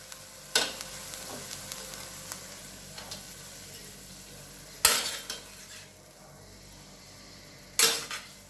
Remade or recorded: recorded